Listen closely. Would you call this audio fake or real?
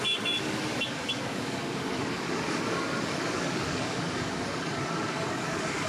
fake